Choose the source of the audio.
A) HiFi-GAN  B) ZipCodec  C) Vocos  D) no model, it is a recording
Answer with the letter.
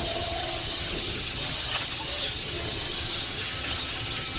A